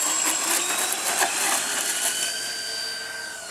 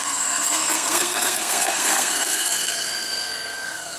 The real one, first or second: first